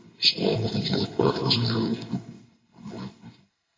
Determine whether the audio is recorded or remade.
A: remade